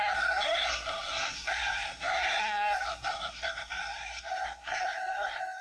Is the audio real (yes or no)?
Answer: no